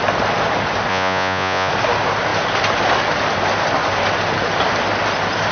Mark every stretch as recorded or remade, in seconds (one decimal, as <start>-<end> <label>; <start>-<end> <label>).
0.0-0.9 recorded; 0.9-1.7 remade; 1.7-5.5 recorded